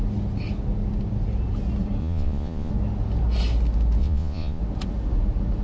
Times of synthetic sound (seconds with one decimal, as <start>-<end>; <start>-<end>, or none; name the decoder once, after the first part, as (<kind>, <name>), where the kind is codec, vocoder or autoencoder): 2.0-2.7 (vocoder, Vocos); 4.0-4.6